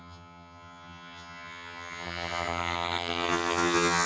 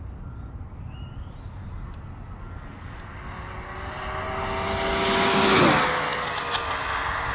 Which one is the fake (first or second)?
first